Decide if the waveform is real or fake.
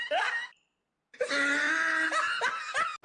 real